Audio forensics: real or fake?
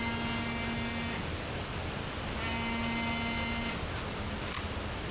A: real